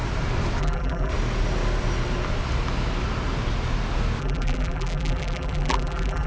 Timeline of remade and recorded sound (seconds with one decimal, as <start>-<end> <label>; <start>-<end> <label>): 0.0-0.6 recorded; 0.6-1.1 remade; 1.1-4.2 recorded; 4.2-6.3 remade